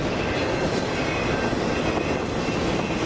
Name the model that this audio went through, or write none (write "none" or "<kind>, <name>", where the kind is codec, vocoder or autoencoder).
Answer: none